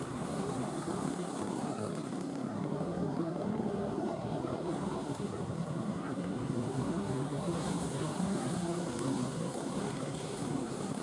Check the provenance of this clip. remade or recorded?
remade